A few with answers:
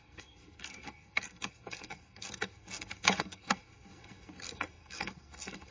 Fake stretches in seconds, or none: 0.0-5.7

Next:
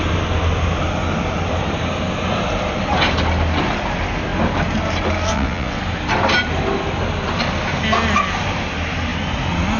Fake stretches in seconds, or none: 5.3-5.8

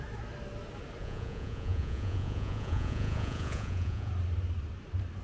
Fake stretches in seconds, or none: 1.0-4.1

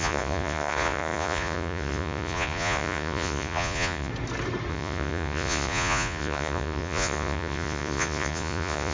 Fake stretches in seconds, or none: 0.0-4.1; 4.7-8.9

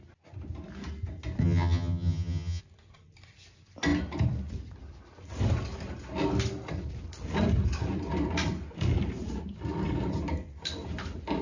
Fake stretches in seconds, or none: 1.4-2.6

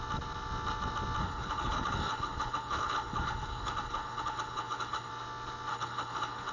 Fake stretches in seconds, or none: 1.2-5.1; 5.7-6.5

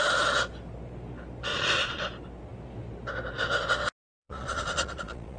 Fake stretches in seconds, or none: 1.5-2.0; 4.2-5.4

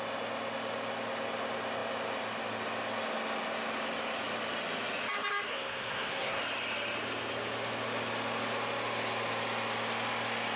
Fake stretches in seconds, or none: 5.5-6.4